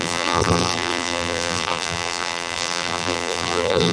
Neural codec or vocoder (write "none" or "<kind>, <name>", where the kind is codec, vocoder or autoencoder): vocoder, BigVGAN v2